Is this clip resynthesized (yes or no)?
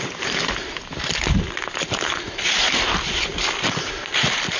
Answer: no